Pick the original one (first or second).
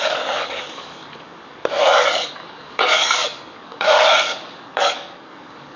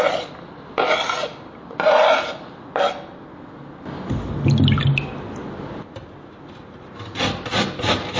second